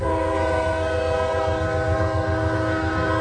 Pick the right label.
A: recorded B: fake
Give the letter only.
B